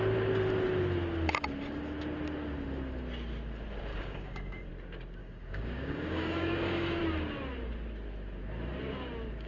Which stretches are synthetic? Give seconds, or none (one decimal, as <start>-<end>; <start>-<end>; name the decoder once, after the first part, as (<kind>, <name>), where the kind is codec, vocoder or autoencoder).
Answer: 3.9-4.7 (codec, DAC); 5.2-7.0